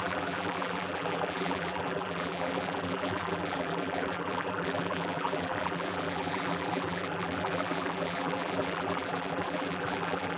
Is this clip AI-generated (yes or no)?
yes